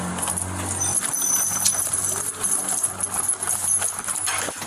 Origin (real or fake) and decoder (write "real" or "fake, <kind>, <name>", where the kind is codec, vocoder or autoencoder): real